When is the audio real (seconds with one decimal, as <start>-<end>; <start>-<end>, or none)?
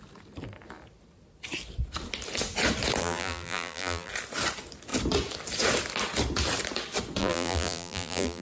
0.0-3.0; 4.1-7.2